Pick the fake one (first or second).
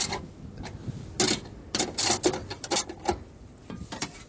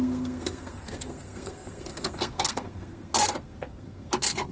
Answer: second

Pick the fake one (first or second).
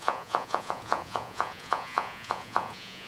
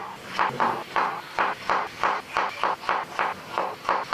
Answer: first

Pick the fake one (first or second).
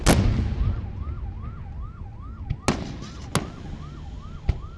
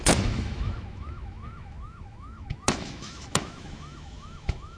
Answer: second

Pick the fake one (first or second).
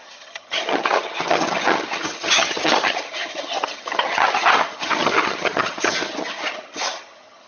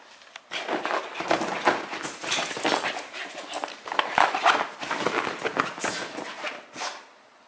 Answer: first